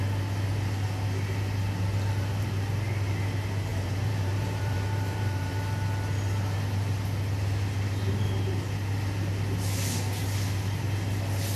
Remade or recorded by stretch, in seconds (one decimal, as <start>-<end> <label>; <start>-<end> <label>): 0.0-3.7 recorded; 3.7-5.5 remade; 5.5-11.6 recorded